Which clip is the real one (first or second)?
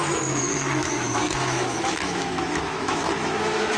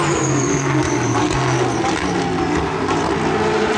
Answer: second